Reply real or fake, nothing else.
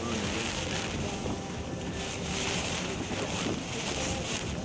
real